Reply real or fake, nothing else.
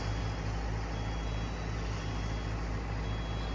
real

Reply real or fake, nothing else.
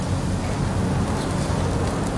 real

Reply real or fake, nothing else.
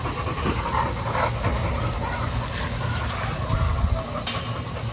real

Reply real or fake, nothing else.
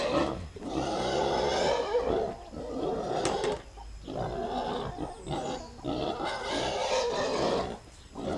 real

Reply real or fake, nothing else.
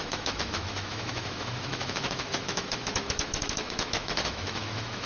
fake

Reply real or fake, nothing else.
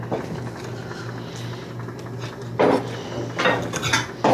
real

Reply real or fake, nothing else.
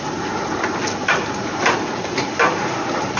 real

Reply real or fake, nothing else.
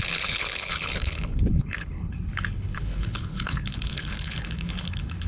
fake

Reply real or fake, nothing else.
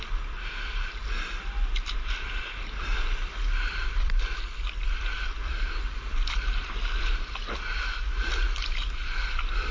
real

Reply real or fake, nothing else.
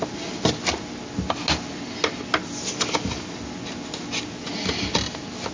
real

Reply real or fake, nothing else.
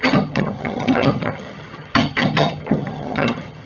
fake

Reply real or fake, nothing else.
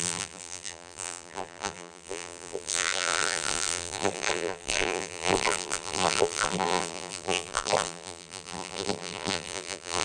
fake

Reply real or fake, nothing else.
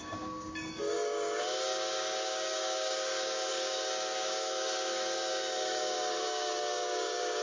fake